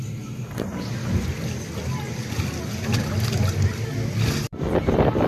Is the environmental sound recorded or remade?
recorded